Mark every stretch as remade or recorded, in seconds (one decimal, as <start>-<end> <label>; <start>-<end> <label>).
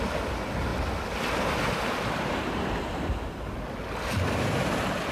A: 0.0-5.1 recorded